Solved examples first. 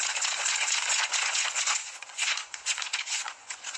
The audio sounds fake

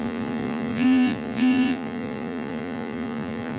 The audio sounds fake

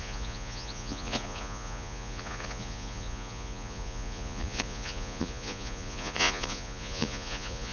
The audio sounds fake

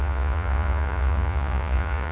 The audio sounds fake